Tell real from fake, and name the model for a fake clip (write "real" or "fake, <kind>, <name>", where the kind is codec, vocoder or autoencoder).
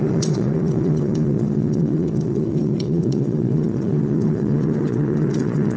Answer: fake, vocoder, Vocos